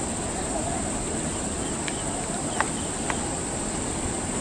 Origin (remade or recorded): recorded